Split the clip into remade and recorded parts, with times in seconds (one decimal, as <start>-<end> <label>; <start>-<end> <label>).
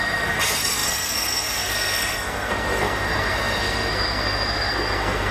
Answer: 0.0-5.3 remade